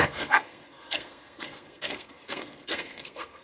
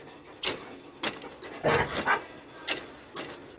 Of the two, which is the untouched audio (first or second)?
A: second